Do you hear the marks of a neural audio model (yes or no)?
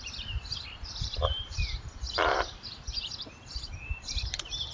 yes